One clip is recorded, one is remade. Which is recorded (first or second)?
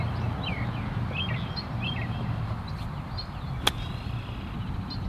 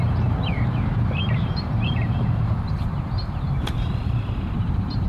first